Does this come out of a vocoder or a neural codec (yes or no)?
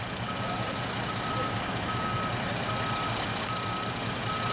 no